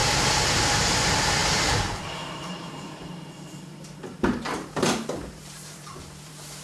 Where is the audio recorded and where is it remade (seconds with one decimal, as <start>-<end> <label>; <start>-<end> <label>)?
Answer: 0.0-0.8 recorded; 0.8-3.1 remade; 3.1-5.2 recorded; 5.2-6.6 remade